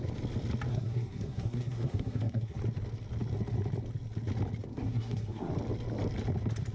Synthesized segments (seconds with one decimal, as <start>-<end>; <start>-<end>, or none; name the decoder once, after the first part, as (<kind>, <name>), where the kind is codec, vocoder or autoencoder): 0.7-2.6 (codec, SNAC); 4.7-5.5